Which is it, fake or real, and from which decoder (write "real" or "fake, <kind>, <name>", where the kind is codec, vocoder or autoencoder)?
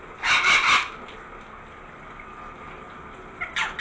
real